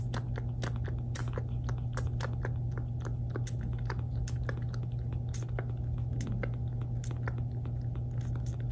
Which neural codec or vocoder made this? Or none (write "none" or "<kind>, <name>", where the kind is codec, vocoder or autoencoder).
none